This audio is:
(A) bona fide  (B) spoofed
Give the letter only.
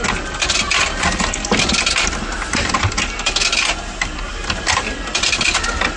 A